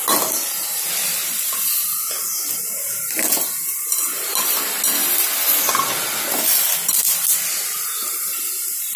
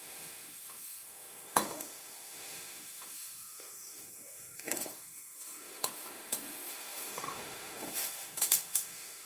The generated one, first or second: second